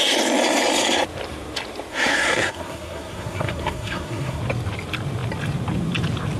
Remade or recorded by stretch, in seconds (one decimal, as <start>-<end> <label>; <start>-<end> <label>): 0.0-1.9 recorded; 1.9-4.4 remade; 4.4-6.4 recorded